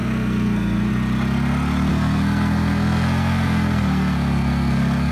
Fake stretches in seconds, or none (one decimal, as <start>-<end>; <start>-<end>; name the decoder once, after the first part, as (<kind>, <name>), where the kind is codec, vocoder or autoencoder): 0.0-0.9 (codec, SNAC); 1.9-5.1